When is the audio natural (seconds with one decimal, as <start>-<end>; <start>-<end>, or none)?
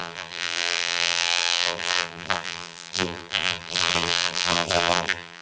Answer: none